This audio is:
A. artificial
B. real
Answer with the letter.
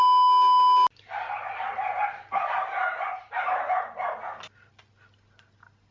B